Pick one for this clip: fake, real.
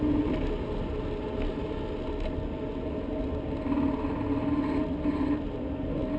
real